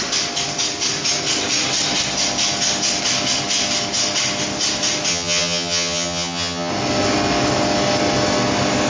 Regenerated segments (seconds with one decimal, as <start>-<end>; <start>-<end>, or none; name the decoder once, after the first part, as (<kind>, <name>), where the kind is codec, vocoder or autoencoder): 5.1-6.7 (vocoder, HiFi-GAN)